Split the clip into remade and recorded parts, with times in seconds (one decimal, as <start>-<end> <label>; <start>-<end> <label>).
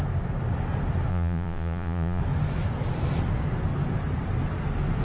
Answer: 0.0-1.1 recorded; 1.1-2.2 remade; 2.2-5.0 recorded